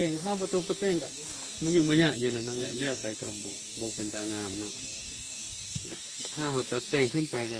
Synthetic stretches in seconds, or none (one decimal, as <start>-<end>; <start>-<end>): 0.0-7.6